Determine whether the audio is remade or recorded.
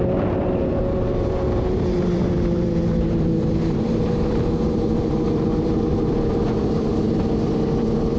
remade